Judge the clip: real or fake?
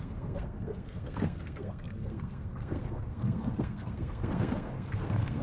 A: fake